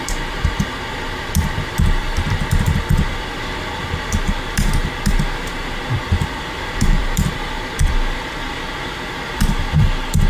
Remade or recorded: remade